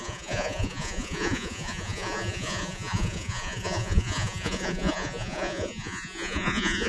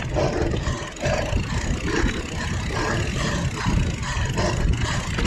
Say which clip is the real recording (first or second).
second